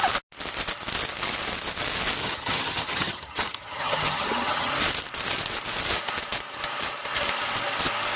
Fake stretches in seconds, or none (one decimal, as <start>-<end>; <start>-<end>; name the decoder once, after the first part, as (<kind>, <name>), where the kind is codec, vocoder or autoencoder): 2.2-4.7 (vocoder, HiFi-GAN)